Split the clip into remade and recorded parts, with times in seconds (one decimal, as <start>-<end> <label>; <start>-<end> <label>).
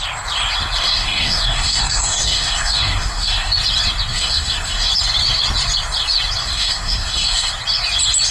0.0-0.8 recorded; 0.8-3.5 remade; 3.5-4.1 recorded; 4.1-4.9 remade; 4.9-6.4 recorded; 6.4-7.5 remade; 7.5-8.3 recorded